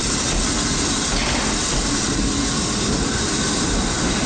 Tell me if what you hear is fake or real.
real